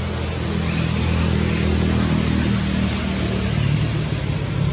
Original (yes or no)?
yes